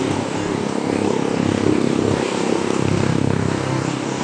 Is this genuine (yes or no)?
no